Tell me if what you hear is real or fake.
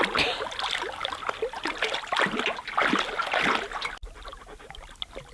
real